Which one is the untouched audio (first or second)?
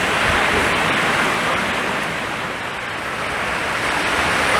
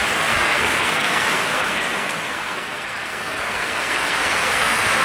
first